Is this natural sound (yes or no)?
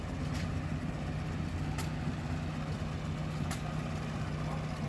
yes